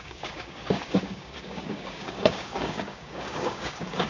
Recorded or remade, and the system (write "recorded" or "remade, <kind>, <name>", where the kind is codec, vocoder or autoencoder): remade, codec, DAC